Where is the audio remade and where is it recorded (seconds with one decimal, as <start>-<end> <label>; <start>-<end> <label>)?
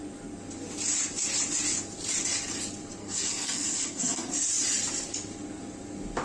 0.0-3.0 recorded; 3.0-4.3 remade; 4.3-6.2 recorded